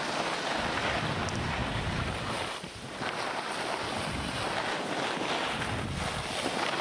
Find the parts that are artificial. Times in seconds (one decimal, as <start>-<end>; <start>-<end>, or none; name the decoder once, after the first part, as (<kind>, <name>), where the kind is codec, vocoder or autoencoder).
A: none